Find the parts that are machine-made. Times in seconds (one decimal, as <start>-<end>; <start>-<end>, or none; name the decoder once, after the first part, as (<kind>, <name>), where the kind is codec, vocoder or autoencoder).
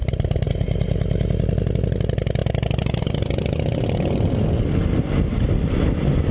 0.0-0.5 (vocoder, BigVGAN v2)